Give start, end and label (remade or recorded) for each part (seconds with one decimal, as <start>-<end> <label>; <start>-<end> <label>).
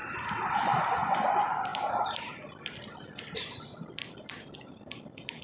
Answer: 0.0-0.8 remade; 0.8-1.7 recorded; 1.7-4.5 remade; 4.5-5.4 recorded